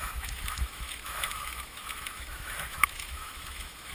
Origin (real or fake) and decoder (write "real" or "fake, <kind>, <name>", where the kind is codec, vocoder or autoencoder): fake, autoencoder, DAC-VAE